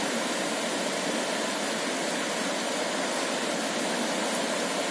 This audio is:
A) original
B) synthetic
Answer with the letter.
A